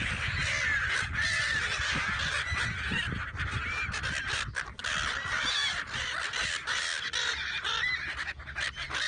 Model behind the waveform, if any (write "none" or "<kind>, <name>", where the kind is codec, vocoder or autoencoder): none